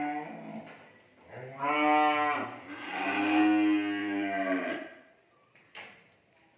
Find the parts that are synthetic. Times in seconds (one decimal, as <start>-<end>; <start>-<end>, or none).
4.0-5.2